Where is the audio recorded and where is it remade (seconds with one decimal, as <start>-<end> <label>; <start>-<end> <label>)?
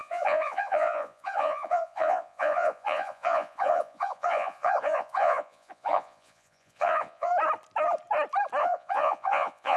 0.0-7.3 remade; 7.3-8.6 recorded; 8.6-9.8 remade